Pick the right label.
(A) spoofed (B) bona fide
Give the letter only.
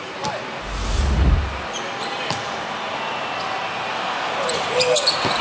B